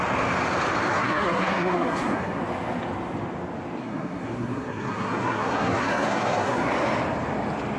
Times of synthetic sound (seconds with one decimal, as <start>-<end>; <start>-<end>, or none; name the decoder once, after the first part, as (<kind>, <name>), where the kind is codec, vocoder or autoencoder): 0.9-2.4 (codec, SNAC); 3.8-6.7